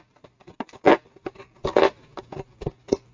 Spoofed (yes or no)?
no